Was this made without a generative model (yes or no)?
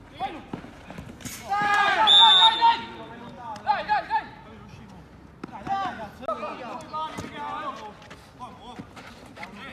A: yes